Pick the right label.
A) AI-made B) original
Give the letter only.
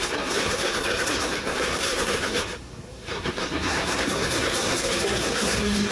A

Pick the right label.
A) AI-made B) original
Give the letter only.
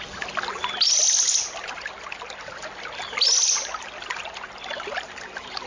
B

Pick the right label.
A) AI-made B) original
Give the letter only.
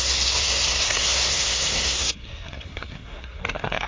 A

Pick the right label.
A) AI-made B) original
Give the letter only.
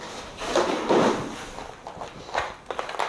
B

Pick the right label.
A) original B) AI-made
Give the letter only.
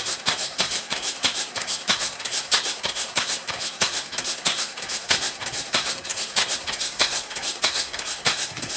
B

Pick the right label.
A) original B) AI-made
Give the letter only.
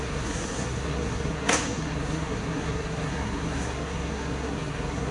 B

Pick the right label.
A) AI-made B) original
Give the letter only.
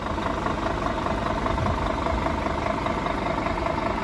B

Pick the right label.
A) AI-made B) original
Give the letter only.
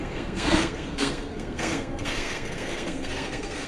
A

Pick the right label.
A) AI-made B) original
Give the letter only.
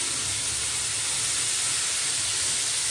B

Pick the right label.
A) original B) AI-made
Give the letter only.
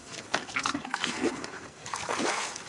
B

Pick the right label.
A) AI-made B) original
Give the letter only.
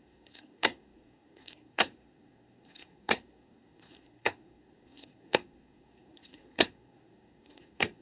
A